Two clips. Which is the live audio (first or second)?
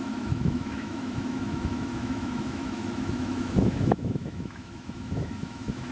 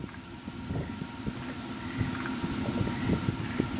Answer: second